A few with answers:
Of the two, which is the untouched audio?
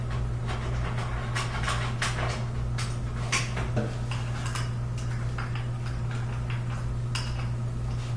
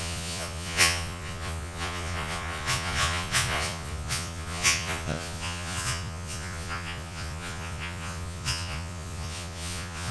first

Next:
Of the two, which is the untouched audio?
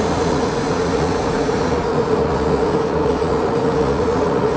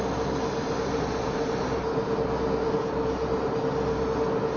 second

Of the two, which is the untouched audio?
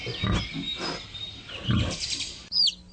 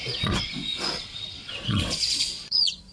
first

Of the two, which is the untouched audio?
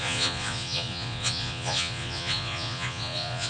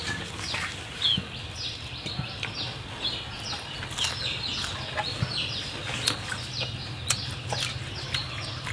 second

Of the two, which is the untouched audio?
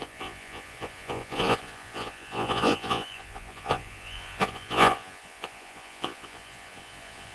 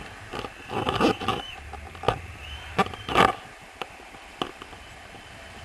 second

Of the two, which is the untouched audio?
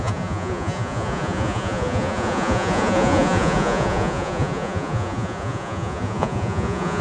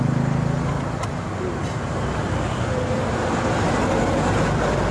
second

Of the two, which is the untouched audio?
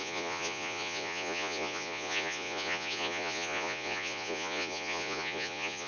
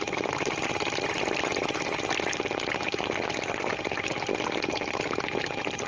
second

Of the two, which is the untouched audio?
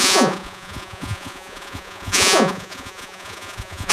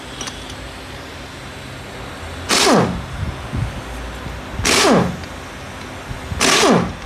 second